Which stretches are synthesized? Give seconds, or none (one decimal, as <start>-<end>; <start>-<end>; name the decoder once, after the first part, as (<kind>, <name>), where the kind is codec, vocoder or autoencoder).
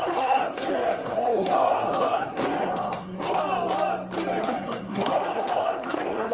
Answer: 0.0-3.4 (codec, SNAC); 4.4-6.3